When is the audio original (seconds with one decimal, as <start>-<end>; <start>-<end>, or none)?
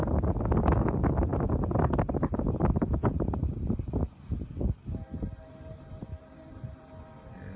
0.0-7.6